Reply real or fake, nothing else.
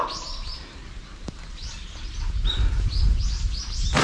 fake